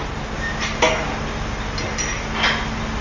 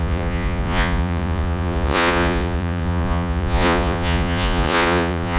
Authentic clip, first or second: first